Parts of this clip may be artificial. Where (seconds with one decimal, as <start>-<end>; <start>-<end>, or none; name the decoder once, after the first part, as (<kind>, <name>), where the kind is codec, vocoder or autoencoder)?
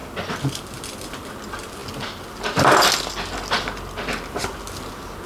none